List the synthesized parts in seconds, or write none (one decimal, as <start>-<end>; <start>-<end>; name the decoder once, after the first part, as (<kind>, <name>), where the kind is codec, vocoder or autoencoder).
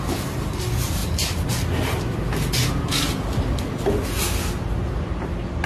none